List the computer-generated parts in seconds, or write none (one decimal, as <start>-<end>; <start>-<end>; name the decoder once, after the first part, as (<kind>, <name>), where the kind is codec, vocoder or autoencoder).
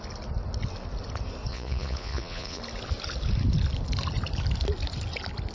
1.5-2.6 (vocoder, Vocos)